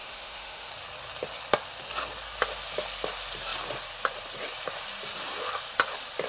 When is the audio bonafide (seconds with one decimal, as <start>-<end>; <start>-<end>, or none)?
0.7-6.3